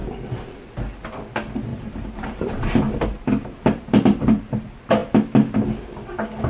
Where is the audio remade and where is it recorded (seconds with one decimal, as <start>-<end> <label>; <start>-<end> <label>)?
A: 0.0-1.7 recorded; 1.7-4.4 remade; 4.4-6.5 recorded